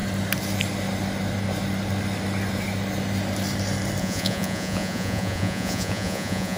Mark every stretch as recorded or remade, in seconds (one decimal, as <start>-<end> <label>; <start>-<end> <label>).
0.0-4.0 recorded; 4.0-6.6 remade